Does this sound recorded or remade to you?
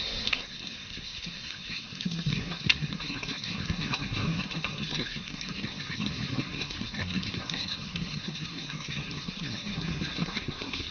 remade